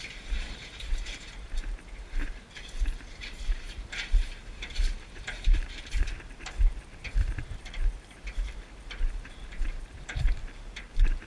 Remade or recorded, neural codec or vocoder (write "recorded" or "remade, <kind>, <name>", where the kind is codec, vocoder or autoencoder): remade, vocoder, BigVGAN v2